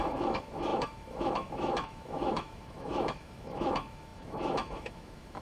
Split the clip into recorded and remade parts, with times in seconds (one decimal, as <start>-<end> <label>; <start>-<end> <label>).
0.0-5.4 remade